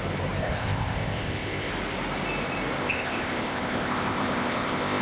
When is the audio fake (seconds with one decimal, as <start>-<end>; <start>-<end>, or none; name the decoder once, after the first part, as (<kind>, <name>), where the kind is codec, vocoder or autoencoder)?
0.4-1.7 (codec, ZipCodec); 2.8-5.0